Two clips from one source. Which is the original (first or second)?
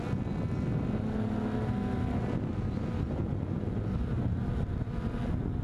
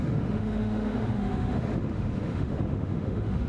first